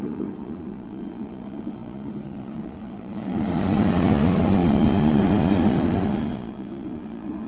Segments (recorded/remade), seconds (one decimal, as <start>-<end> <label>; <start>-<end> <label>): 0.0-7.5 remade